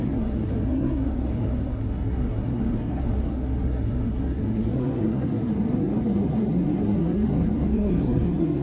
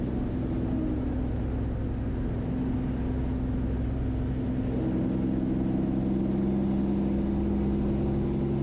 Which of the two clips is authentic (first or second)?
second